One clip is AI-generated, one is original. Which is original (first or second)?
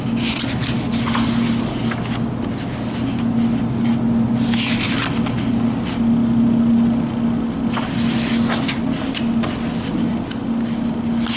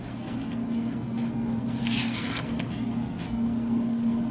first